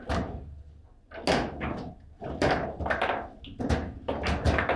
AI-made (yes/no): no